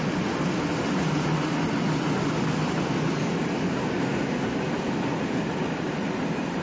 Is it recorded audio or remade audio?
recorded